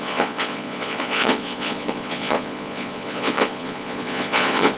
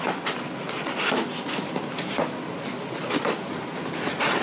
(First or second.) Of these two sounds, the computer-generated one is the first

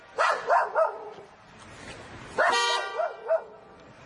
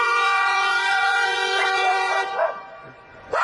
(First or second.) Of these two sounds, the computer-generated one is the second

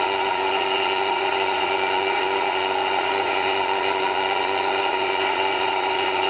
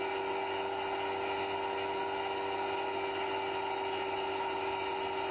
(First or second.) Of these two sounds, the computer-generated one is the first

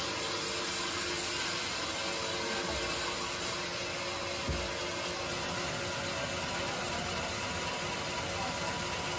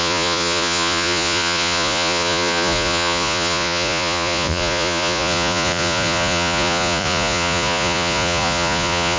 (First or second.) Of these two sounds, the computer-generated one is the second